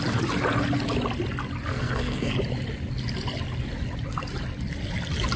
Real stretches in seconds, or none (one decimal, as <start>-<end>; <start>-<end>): 0.0-1.7; 2.3-5.4